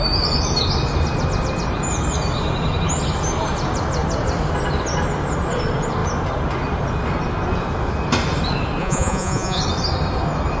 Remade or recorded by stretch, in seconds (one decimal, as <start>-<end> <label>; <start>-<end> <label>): 0.0-8.8 recorded; 8.8-9.6 remade; 9.6-10.6 recorded